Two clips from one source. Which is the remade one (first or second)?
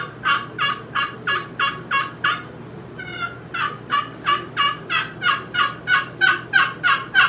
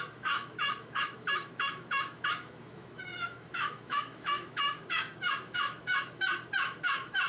second